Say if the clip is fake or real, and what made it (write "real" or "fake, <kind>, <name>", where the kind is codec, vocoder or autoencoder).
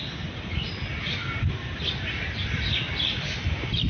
real